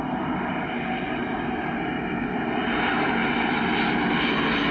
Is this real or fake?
real